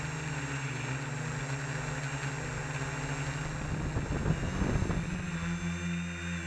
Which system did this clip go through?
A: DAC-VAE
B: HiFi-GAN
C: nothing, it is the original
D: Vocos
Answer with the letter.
C